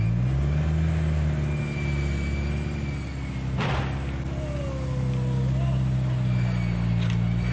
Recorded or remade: recorded